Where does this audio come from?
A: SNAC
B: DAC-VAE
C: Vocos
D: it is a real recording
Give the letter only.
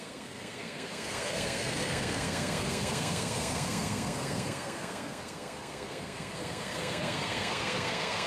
A